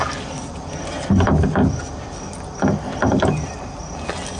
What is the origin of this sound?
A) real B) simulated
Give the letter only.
A